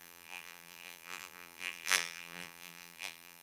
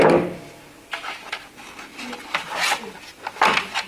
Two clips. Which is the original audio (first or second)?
second